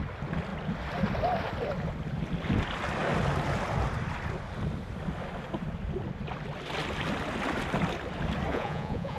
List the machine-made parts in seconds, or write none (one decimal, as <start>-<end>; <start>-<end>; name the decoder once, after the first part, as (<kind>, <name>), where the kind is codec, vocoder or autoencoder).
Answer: 8.5-9.2 (vocoder, Vocos)